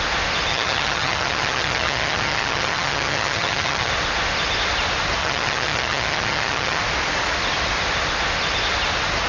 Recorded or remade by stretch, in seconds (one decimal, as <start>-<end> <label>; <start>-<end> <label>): 0.0-0.5 recorded; 0.5-3.9 remade; 3.9-5.2 recorded; 5.2-6.8 remade; 6.8-9.3 recorded